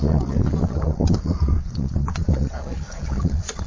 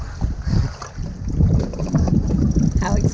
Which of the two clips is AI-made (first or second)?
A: first